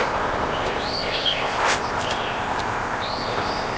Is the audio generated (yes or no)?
yes